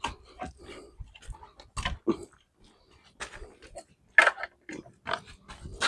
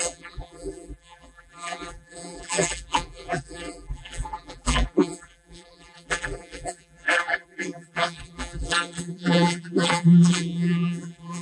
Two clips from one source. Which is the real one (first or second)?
first